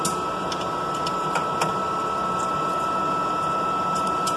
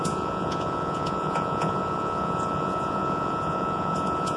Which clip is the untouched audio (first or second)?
first